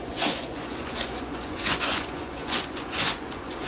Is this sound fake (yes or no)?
yes